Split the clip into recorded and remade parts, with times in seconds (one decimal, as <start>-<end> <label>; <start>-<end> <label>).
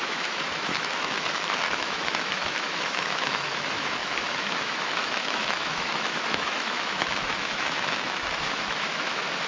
0.0-9.5 remade